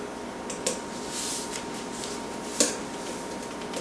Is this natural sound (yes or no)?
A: yes